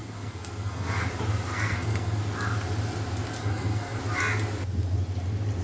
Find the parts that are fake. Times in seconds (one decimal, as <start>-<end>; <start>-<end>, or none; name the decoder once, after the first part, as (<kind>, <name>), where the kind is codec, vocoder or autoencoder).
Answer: 0.0-1.1 (codec, SNAC); 1.5-2.2; 3.4-4.0